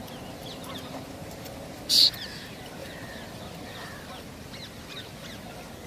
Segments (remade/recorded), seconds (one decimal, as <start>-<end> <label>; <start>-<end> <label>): 0.0-1.2 recorded; 1.2-2.3 remade; 2.3-2.8 recorded; 2.8-4.1 remade; 4.1-5.9 recorded